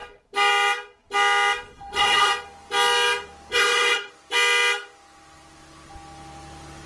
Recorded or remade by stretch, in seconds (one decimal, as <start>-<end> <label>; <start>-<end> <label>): 0.0-1.7 recorded; 1.7-2.3 remade; 2.3-3.5 recorded; 3.5-4.1 remade; 4.1-6.9 recorded